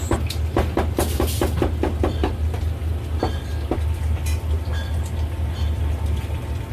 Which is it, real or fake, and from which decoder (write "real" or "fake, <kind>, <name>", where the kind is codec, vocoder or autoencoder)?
real